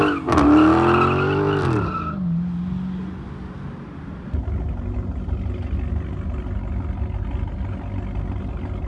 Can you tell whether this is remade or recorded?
recorded